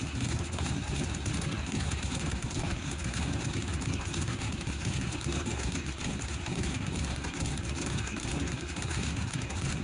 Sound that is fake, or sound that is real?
fake